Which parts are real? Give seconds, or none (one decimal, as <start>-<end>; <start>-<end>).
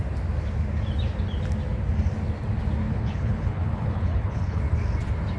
0.0-2.8; 4.6-5.4